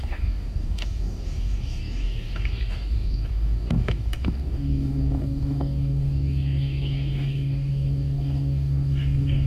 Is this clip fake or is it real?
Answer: fake